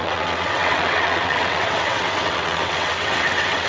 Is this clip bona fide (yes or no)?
no